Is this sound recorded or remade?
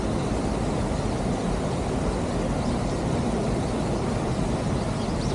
recorded